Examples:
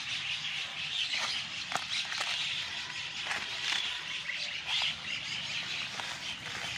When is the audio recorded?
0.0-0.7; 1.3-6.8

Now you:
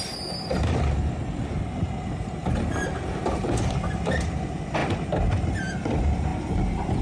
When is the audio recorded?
0.0-1.5; 3.3-6.3

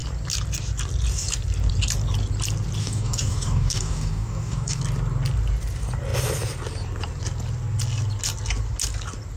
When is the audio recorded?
0.0-2.8; 4.8-9.4

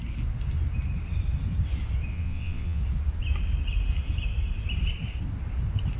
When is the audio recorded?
0.0-2.1; 2.8-6.0